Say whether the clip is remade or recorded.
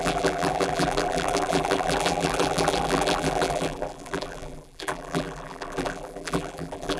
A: remade